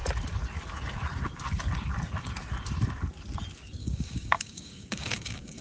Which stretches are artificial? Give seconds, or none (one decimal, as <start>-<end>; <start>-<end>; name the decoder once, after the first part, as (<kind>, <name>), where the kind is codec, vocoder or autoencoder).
3.8-5.6 (codec, DAC)